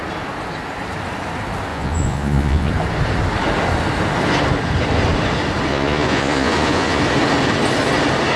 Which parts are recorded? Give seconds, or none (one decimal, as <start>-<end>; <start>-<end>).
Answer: 0.0-1.7; 2.7-5.7; 7.0-8.4